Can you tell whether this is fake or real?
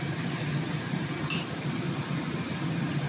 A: real